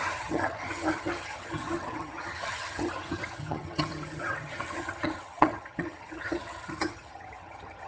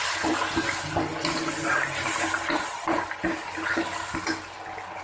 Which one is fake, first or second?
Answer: first